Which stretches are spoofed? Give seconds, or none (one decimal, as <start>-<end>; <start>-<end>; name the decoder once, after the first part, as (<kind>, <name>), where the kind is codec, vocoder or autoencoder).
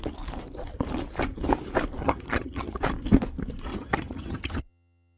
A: 2.0-2.8 (vocoder, HiFi-GAN); 3.7-5.2